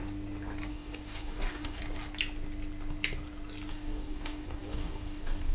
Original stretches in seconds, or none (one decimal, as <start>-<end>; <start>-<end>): 0.0-0.7; 1.8-3.7